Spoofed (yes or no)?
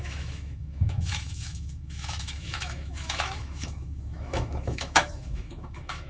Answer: yes